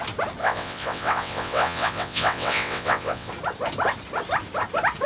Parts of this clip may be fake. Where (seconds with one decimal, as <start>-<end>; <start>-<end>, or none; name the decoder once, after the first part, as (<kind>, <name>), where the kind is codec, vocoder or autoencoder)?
0.4-3.3 (vocoder, WaveNeXt)